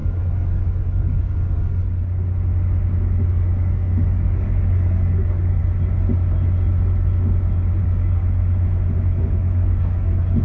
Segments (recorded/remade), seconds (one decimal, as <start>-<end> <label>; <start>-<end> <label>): 0.0-1.8 remade; 1.8-3.3 recorded; 3.3-5.6 remade; 5.6-7.8 recorded; 7.8-8.2 remade; 8.2-9.0 recorded; 9.0-10.4 remade